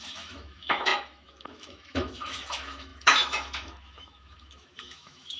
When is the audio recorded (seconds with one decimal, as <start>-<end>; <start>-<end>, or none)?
none